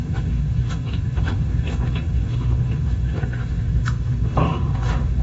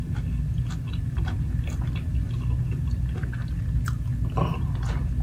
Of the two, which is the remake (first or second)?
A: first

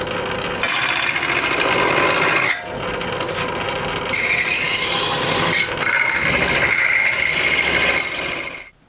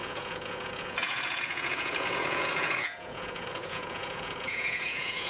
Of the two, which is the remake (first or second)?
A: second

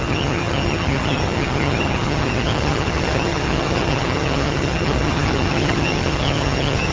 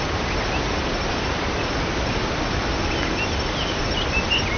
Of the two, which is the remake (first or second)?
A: first